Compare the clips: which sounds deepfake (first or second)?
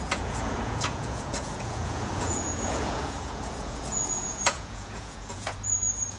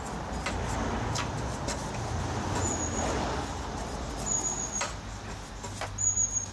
first